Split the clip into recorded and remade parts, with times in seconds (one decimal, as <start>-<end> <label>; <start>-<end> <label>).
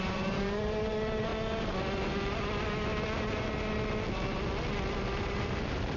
0.0-1.3 remade; 1.3-4.9 recorded; 4.9-6.0 remade